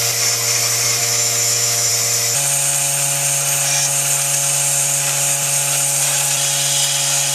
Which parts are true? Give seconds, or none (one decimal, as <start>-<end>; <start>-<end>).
0.0-1.0; 1.9-7.3